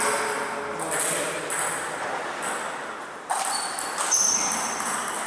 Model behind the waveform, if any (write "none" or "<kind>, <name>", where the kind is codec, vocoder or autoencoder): none